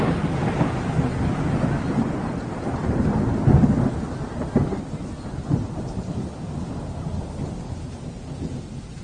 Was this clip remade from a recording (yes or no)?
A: no